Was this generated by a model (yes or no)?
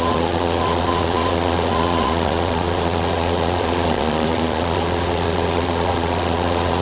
yes